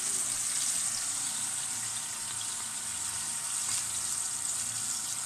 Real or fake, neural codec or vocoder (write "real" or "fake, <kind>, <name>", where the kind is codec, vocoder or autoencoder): real